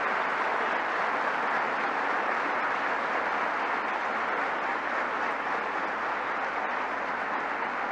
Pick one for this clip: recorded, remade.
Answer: recorded